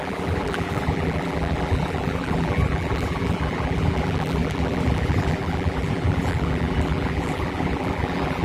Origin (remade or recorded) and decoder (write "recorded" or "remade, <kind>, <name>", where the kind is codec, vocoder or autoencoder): remade, vocoder, BigVGAN v2